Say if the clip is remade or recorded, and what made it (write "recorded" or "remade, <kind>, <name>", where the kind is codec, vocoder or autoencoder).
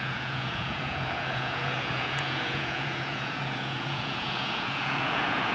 remade, vocoder, Vocos